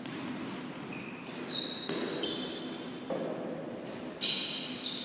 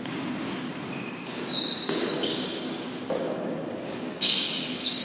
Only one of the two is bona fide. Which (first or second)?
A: first